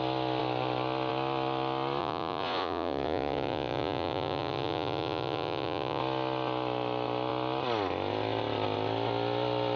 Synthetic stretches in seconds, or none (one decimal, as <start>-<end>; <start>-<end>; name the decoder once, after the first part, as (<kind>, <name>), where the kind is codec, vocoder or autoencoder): 2.0-6.0 (vocoder, Vocos)